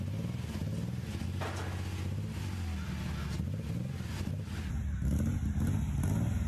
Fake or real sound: real